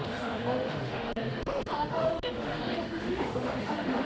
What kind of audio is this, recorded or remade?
remade